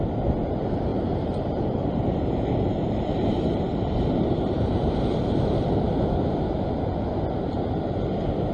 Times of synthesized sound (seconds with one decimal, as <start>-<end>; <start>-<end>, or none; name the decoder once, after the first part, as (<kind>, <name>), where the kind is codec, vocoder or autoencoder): 0.9-4.9 (vocoder, BigVGAN v2)